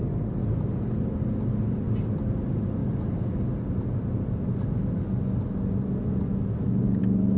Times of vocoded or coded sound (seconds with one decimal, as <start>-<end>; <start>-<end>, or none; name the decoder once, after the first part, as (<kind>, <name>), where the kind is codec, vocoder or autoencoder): none